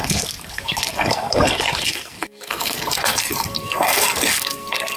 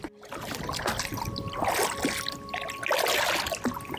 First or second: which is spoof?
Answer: first